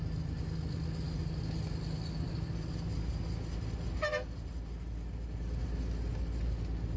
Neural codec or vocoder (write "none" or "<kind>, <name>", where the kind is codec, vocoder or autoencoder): none